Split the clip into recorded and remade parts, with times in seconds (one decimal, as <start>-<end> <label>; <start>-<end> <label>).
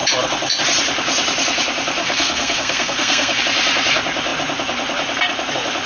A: 0.0-2.0 recorded; 2.0-3.4 remade; 3.4-5.9 recorded